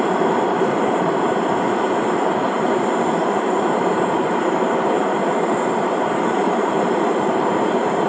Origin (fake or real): fake